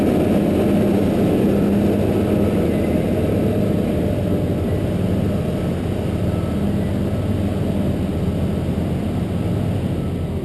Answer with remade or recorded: recorded